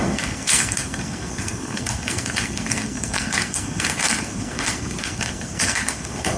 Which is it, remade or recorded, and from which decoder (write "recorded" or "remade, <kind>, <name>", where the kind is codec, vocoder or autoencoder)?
remade, codec, SNAC